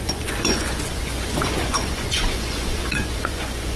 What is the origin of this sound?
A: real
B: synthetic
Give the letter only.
B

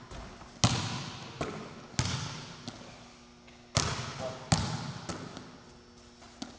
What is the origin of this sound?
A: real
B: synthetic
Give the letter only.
A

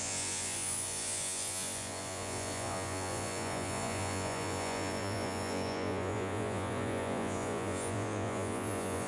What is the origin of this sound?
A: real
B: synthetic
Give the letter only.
B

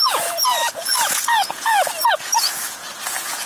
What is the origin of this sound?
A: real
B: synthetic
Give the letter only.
B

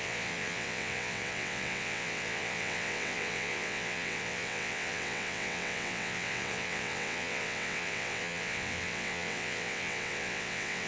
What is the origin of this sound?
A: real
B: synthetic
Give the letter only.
B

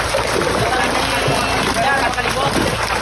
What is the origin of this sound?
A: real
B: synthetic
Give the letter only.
A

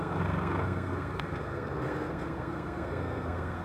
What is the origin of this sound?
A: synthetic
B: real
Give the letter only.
A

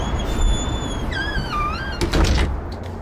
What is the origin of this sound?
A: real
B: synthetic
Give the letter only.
A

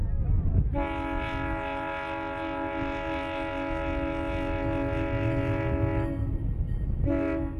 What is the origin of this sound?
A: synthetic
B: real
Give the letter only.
B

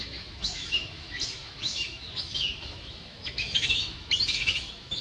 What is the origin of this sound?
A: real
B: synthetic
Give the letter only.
B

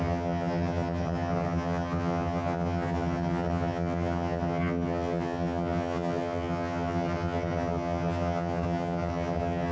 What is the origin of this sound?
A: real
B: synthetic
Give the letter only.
B